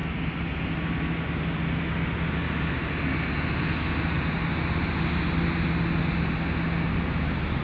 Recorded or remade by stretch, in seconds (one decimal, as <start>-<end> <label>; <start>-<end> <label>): 0.0-7.6 recorded